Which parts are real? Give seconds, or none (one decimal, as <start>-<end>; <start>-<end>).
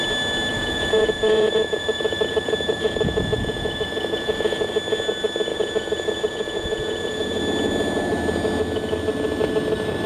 0.0-0.5; 4.7-5.5; 7.4-10.1